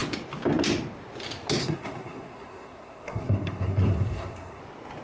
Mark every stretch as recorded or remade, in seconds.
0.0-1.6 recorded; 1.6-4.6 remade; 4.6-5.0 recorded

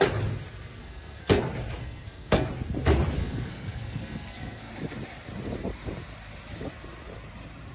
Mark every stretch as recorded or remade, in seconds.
0.0-0.8 recorded; 0.8-1.4 remade; 1.4-1.8 recorded; 1.8-2.5 remade; 2.5-3.2 recorded; 3.2-4.7 remade; 4.7-7.7 recorded

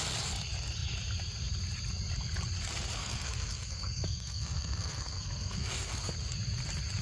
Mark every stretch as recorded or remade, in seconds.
0.0-3.0 recorded; 3.0-6.1 remade; 6.1-7.0 recorded

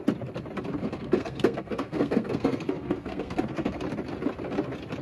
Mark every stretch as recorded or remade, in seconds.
0.0-0.8 recorded; 0.8-3.8 remade; 3.8-5.0 recorded

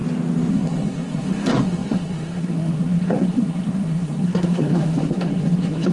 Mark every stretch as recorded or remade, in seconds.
0.0-0.5 recorded; 0.5-5.9 remade

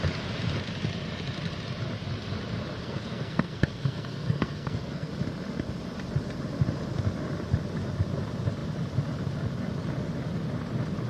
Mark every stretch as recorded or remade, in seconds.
0.0-2.8 recorded; 2.8-5.1 remade; 5.1-11.1 recorded

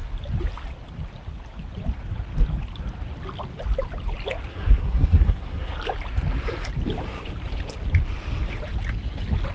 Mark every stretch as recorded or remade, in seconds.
0.0-4.5 recorded; 4.5-5.7 remade; 5.7-9.5 recorded

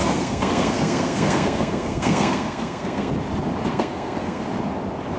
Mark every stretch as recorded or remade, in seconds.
0.0-3.1 remade; 3.1-3.7 recorded; 3.7-4.4 remade; 4.4-5.2 recorded